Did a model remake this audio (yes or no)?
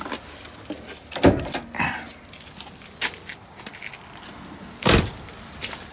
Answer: no